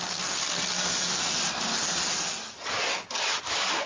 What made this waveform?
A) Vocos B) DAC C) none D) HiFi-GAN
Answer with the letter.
C